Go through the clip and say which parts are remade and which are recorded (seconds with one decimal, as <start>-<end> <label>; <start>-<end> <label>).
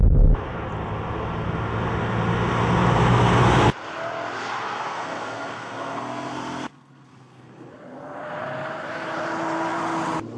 0.0-4.6 recorded; 4.6-7.7 remade; 7.7-10.4 recorded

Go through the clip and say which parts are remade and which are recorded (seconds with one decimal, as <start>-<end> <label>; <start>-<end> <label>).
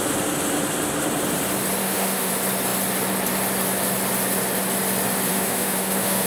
0.0-1.8 recorded; 1.8-2.3 remade; 2.3-5.3 recorded; 5.3-6.3 remade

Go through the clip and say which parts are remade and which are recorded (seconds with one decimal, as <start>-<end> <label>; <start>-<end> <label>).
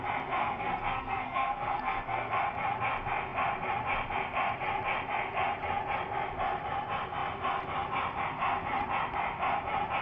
0.0-0.4 recorded; 0.4-2.3 remade; 2.3-10.0 recorded